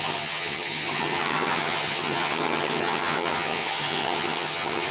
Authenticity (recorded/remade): remade